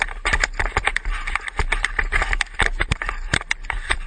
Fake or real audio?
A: real